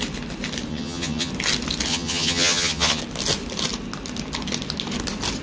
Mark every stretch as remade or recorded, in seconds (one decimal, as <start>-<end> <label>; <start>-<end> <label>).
0.0-0.7 recorded; 0.7-1.3 remade; 1.3-1.9 recorded; 1.9-3.0 remade; 3.0-5.4 recorded